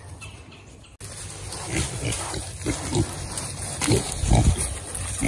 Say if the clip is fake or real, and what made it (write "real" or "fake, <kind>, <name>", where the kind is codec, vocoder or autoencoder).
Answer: real